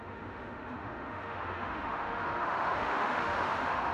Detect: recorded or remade remade